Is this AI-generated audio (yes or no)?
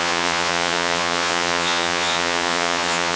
yes